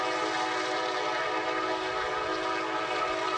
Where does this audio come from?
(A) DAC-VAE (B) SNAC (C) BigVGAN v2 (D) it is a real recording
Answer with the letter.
D